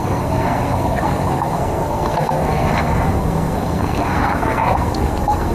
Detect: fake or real fake